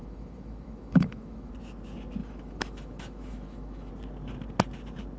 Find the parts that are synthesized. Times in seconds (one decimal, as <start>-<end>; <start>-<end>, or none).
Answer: 0.0-1.5; 2.2-3.9

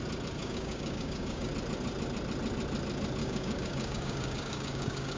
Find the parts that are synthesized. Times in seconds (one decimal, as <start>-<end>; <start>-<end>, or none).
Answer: 0.4-1.5; 3.2-5.2

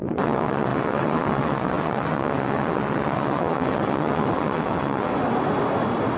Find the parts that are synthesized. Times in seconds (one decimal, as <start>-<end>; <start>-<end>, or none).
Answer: 0.0-5.1

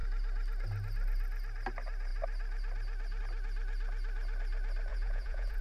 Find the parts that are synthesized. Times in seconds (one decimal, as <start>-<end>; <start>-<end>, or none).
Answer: 4.9-5.6